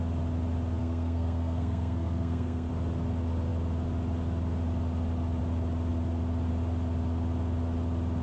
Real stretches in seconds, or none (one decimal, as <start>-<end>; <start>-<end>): 0.0-0.8; 2.7-8.2